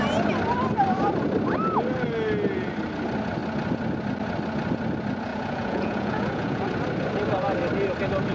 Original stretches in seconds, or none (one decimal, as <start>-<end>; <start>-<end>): 0.0-5.3; 6.6-8.3